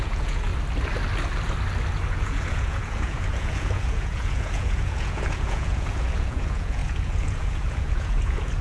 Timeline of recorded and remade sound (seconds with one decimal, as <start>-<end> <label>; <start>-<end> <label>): 0.0-0.5 remade; 0.5-2.1 recorded; 2.1-8.6 remade